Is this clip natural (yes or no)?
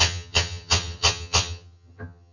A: no